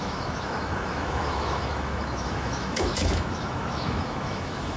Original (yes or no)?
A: no